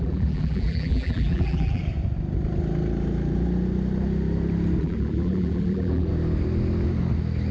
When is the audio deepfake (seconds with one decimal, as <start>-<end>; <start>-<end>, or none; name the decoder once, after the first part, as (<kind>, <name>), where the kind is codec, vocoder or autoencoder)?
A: 0.0-1.8 (vocoder, BigVGAN v2); 4.8-6.1